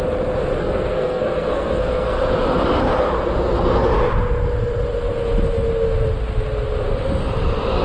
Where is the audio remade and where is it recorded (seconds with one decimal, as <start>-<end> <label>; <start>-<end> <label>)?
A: 0.0-0.6 recorded; 0.6-2.2 remade; 2.2-7.8 recorded